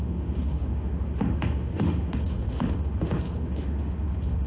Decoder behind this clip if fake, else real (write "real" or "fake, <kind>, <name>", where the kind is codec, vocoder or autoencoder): fake, autoencoder, DAC-VAE